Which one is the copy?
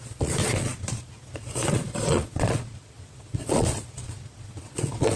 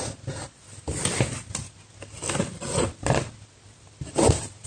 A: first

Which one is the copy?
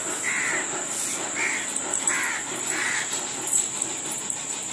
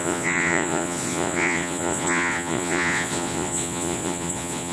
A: second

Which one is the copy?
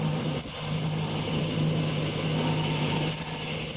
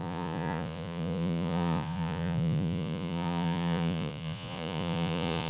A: second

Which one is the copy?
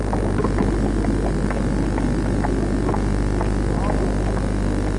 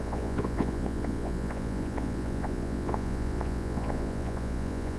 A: second